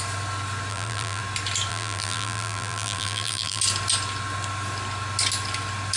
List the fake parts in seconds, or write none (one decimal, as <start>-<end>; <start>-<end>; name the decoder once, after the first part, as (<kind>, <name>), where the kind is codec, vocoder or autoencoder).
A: 0.7-1.2 (vocoder, BigVGAN v2); 1.7-3.6